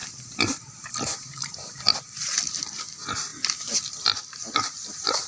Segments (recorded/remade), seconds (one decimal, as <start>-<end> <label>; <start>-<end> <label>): 0.0-5.3 recorded